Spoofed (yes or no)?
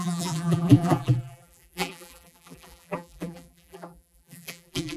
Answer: yes